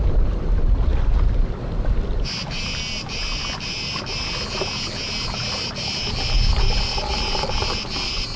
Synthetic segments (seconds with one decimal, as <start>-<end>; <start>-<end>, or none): none